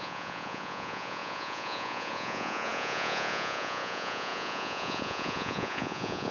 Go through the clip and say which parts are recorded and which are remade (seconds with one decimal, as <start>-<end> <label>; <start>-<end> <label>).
0.0-6.3 remade